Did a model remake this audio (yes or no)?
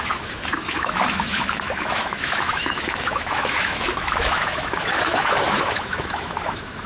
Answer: yes